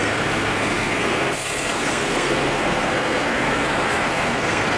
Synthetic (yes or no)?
yes